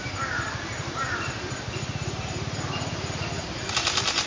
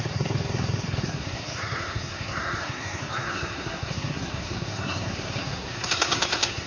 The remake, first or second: second